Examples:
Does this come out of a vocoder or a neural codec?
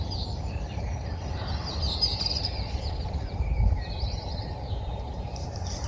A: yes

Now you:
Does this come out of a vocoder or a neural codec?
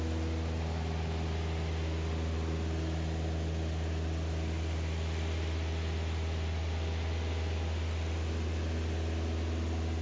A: no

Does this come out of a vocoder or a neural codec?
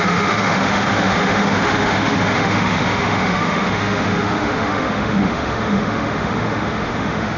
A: yes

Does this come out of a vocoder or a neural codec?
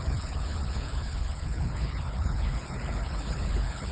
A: yes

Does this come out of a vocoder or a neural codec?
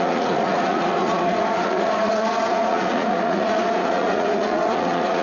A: yes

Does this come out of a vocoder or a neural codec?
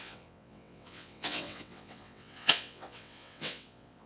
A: yes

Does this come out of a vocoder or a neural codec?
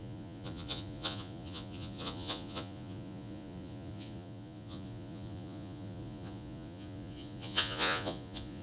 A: yes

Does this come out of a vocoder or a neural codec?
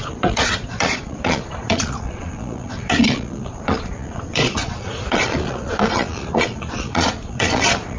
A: yes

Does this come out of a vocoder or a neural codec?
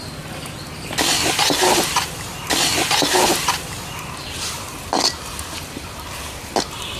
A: no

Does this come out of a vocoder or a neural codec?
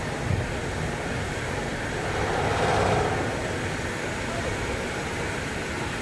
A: no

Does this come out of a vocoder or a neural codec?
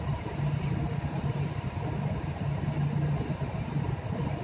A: no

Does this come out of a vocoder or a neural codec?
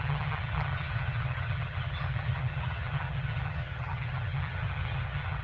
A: yes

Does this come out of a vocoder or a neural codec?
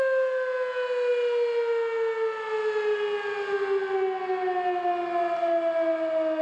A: no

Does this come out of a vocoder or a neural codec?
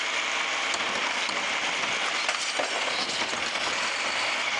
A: no